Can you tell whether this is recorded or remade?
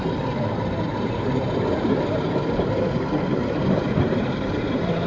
remade